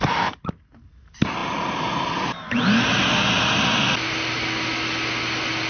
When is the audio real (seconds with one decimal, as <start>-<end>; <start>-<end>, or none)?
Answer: 0.0-5.7